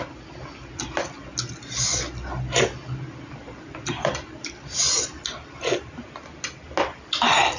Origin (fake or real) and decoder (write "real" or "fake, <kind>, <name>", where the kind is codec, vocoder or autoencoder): real